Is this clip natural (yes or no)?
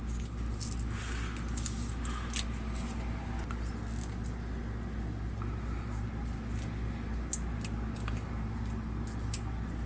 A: yes